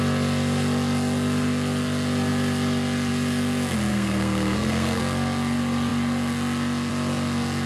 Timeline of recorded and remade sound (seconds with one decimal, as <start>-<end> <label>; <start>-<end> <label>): 0.0-3.9 recorded; 3.9-5.0 remade; 5.0-7.7 recorded